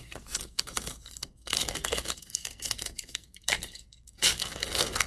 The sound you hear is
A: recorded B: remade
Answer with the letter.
B